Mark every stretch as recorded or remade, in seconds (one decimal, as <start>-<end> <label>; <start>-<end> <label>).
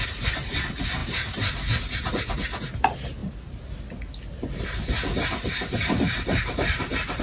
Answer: 0.0-1.0 recorded; 1.0-1.8 remade; 1.8-5.8 recorded; 5.8-7.2 remade